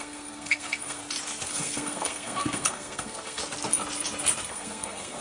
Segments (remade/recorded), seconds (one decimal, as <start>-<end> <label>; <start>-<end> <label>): 0.0-1.0 remade; 1.0-1.5 recorded; 1.5-3.4 remade; 3.4-4.5 recorded; 4.5-5.2 remade